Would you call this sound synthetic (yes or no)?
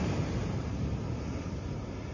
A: no